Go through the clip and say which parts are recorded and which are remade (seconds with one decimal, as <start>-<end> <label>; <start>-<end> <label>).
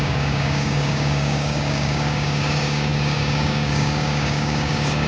0.0-5.1 remade